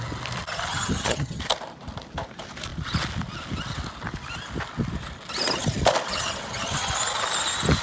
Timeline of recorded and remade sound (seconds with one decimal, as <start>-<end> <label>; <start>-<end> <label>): 0.0-0.7 recorded; 0.7-1.4 remade; 1.4-6.1 recorded; 6.1-6.9 remade; 6.9-7.8 recorded